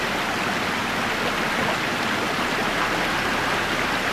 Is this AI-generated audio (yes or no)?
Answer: no